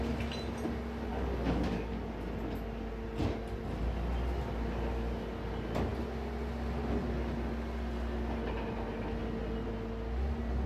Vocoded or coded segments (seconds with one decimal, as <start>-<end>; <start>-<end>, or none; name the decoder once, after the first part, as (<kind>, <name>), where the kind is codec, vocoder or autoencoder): 1.1-1.9 (codec, DAC)